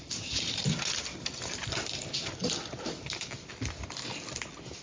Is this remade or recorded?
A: recorded